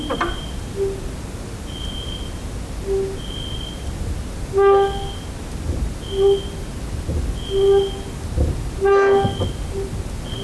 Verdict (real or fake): real